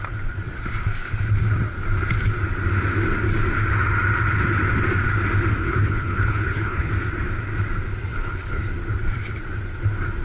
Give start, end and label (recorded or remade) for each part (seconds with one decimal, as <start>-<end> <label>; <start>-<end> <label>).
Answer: 0.0-5.6 recorded; 5.6-6.9 remade; 6.9-8.1 recorded; 8.1-8.6 remade; 8.6-10.2 recorded